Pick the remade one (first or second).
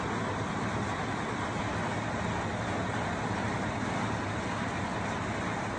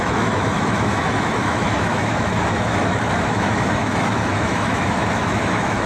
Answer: second